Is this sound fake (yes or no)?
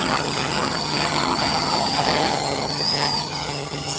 yes